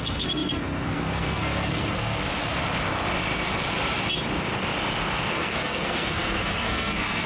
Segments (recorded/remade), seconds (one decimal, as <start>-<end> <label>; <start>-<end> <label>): 0.0-2.2 remade; 2.2-5.3 recorded; 5.3-7.3 remade